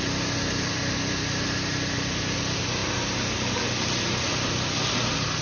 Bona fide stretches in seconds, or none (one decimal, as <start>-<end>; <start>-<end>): 0.0-5.4

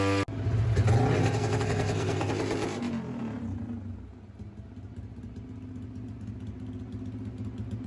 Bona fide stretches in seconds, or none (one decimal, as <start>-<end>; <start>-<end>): 0.0-1.2; 2.3-7.9

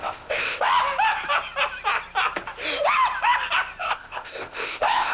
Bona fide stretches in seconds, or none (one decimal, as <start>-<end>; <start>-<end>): 0.7-3.8

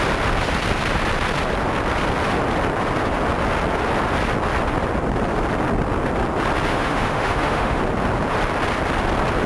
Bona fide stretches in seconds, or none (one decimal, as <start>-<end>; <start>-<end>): 0.0-6.7; 7.8-9.5

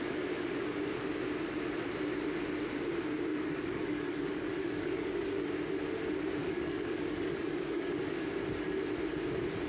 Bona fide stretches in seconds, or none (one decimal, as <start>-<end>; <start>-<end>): 0.0-3.3; 5.4-6.4; 8.3-9.7

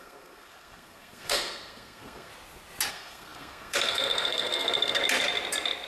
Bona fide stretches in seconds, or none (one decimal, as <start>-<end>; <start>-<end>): 2.3-2.9; 5.0-5.9

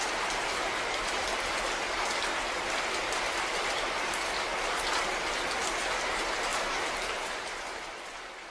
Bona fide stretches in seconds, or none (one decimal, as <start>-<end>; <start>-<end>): 0.0-6.5; 8.0-8.5